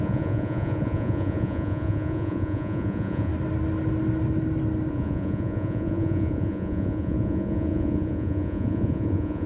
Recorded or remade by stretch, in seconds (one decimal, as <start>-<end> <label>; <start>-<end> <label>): 0.0-3.3 remade; 3.3-4.9 recorded; 4.9-9.5 remade